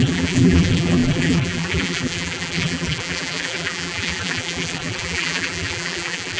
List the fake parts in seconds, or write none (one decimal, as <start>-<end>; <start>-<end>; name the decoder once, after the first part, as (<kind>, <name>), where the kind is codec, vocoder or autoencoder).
0.0-6.4 (vocoder, BigVGAN v2)